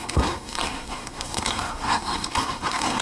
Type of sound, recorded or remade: remade